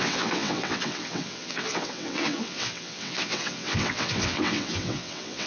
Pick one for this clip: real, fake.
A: fake